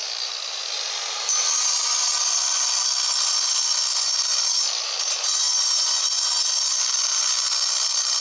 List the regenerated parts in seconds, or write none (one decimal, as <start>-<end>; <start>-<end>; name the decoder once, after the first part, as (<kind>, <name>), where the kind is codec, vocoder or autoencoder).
4.3-5.0 (vocoder, BigVGAN v2)